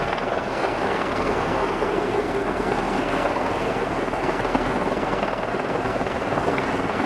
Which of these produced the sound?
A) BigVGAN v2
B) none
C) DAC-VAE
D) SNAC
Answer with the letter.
D